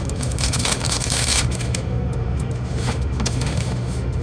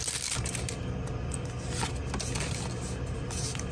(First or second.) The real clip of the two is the second